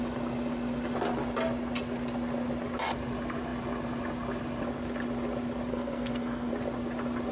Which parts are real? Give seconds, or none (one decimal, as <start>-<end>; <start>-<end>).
0.0-5.7; 6.5-7.3